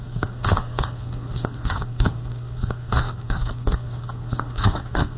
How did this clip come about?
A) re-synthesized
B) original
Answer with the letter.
A